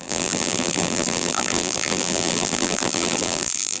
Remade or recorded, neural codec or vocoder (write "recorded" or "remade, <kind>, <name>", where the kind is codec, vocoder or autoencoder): remade, vocoder, BigVGAN v2